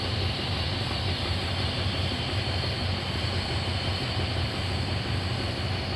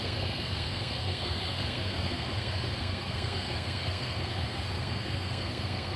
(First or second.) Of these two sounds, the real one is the first